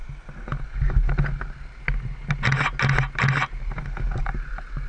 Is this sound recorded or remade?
recorded